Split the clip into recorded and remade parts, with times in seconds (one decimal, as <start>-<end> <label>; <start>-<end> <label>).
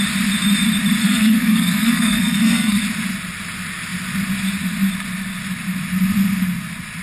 0.0-1.0 recorded; 1.0-2.8 remade; 2.8-7.0 recorded